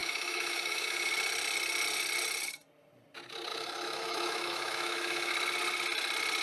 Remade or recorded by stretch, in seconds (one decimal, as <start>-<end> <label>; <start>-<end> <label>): 0.0-1.1 remade; 1.1-3.5 recorded; 3.5-5.3 remade; 5.3-6.4 recorded